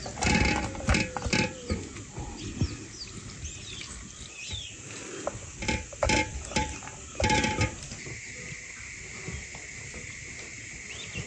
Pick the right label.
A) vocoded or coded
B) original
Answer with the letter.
B